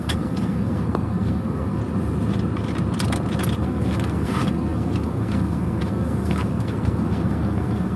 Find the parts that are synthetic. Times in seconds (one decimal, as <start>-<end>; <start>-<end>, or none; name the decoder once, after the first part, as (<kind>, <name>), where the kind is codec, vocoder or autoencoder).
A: 0.0-1.8 (codec, SNAC); 3.6-8.0